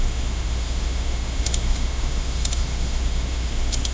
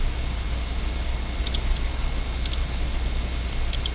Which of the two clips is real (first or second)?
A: second